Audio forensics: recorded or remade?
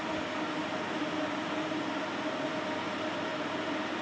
recorded